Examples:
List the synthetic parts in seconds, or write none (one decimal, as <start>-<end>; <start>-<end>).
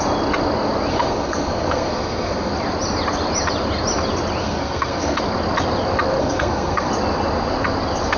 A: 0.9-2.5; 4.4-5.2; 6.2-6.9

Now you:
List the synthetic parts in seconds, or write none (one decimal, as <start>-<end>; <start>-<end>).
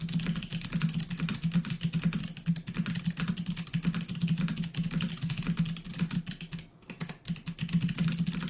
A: none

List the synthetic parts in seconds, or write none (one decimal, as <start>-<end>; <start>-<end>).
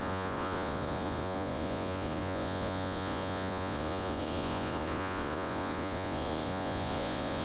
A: 0.0-7.4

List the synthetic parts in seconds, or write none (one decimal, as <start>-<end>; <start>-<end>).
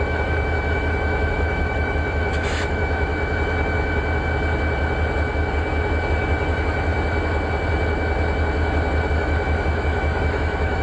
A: 0.0-3.1; 6.5-6.9; 9.1-10.8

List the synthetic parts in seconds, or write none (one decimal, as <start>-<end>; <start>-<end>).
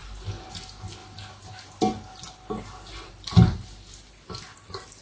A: none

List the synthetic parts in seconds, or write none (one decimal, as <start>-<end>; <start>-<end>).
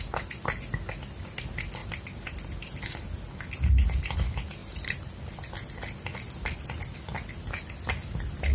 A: 4.6-5.1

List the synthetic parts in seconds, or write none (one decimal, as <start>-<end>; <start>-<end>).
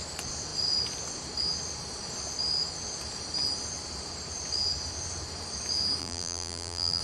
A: 6.0-7.0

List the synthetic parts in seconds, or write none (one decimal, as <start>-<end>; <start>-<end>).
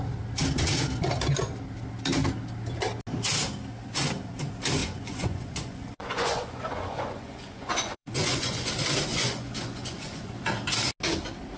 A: 4.8-8.7; 9.1-10.3